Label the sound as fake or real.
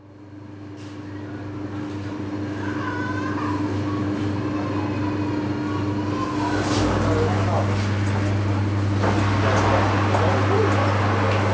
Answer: real